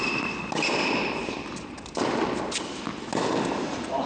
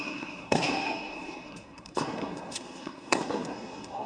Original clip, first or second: first